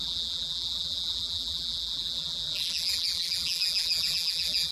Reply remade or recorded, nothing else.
remade